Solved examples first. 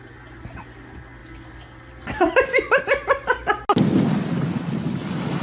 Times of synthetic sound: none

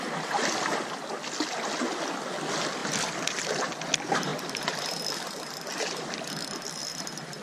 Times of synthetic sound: none

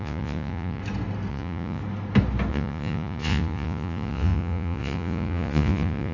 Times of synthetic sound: 0.0-0.8 (vocoder, Vocos); 1.3-1.8; 2.5-6.1

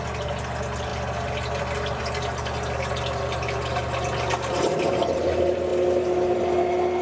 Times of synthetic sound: none